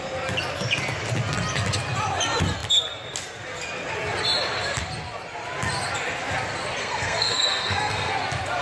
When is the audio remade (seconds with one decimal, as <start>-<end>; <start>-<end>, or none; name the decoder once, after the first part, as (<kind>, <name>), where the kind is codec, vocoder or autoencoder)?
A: 6.8-8.1 (codec, SNAC)